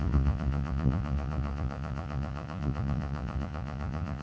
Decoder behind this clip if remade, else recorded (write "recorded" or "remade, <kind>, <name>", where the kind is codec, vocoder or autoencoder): remade, vocoder, Vocos